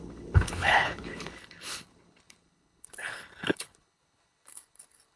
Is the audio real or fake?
fake